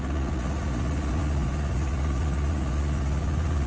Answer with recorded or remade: remade